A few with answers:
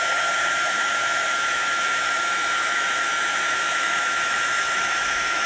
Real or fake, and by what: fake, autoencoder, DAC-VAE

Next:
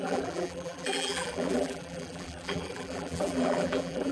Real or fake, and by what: fake, vocoder, BigVGAN v2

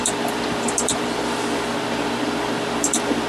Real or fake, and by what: fake, vocoder, BigVGAN v2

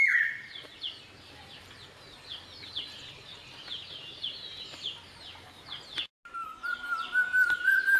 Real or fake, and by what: real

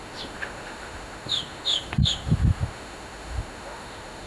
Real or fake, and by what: fake, autoencoder, DAC-VAE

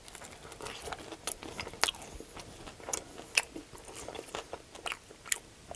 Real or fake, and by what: real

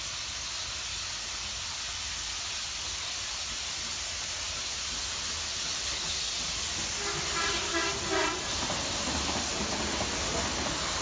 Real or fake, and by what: real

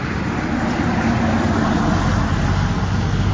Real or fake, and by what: real